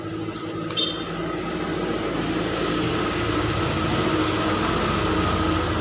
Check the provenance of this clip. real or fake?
real